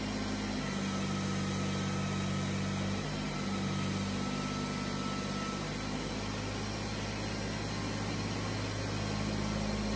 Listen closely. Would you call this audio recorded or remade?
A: recorded